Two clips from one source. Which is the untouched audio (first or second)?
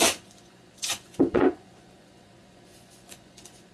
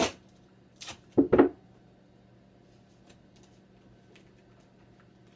second